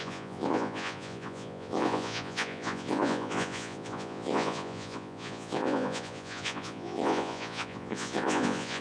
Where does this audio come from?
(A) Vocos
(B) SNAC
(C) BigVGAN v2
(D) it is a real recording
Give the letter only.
A